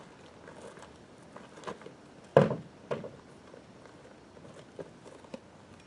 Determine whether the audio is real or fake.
real